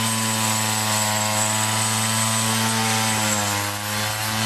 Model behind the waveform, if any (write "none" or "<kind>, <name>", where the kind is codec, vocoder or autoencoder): none